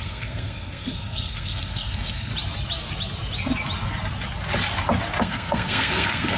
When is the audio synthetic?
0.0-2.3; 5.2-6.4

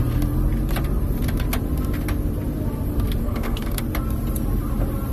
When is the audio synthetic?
3.2-3.8

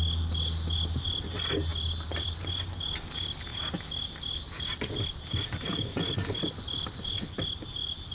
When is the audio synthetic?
none

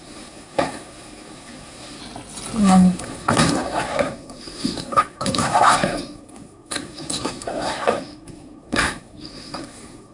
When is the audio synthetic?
0.0-2.0; 2.6-10.1

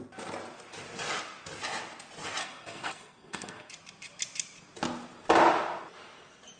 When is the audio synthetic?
2.4-3.7